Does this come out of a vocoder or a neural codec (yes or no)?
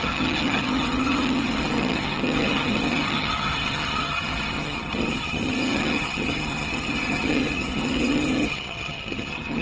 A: yes